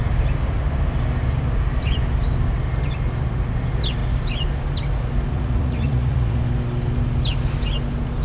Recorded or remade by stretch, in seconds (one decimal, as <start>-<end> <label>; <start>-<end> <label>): 0.0-5.3 recorded; 5.3-6.4 remade; 6.4-8.2 recorded